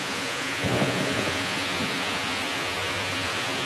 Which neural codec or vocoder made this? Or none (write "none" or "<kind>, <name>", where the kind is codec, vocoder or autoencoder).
vocoder, Vocos